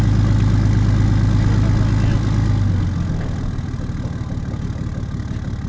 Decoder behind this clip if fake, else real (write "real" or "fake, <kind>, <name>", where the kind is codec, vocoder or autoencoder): real